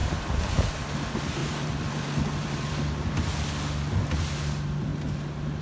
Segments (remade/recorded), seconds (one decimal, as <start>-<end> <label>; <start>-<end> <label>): 0.0-0.7 remade; 0.7-1.4 recorded; 1.4-3.1 remade; 3.1-5.6 recorded